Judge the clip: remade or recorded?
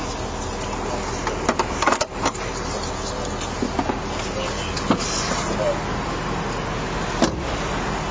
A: recorded